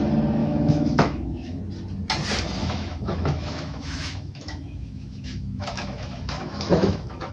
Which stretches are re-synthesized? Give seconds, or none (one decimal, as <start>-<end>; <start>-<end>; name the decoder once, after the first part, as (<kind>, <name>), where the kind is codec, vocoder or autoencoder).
0.4-1.6 (autoencoder, DAC-VAE); 2.6-7.3